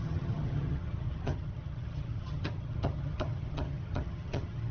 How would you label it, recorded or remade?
remade